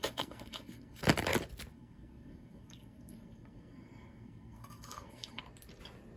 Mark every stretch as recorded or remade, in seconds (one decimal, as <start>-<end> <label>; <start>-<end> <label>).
0.0-1.0 remade; 1.0-1.7 recorded; 1.7-5.4 remade; 5.4-6.2 recorded